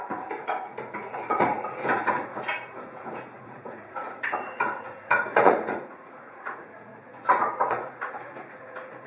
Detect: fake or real fake